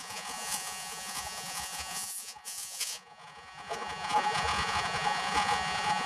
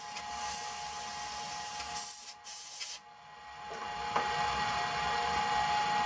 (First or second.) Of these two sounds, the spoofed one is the first